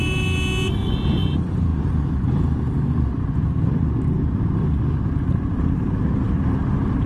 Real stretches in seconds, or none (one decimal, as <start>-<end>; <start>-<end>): 0.0-7.1